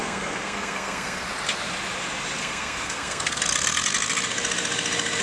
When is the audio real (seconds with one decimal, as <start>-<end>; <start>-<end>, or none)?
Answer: 1.2-2.4; 3.4-5.2